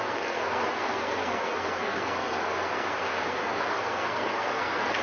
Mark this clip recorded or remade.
remade